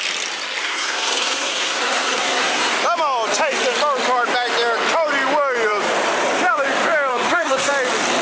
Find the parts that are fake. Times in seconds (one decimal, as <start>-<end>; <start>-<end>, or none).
0.6-2.7; 7.1-7.7